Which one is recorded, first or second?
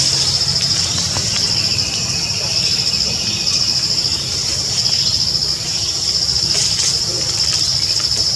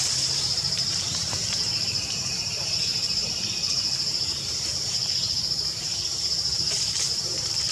first